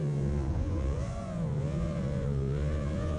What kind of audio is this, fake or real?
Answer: fake